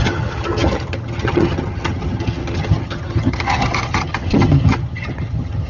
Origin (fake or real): fake